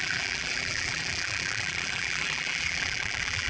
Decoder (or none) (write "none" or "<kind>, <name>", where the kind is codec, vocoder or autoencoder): vocoder, BigVGAN v2